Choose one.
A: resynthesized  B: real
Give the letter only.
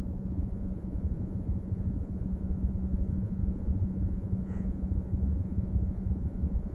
A